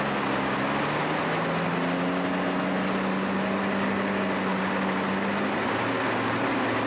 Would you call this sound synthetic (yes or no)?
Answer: no